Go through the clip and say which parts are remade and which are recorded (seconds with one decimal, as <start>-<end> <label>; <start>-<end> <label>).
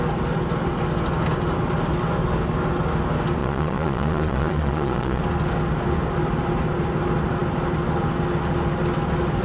0.0-3.4 recorded; 3.4-5.2 remade; 5.2-9.4 recorded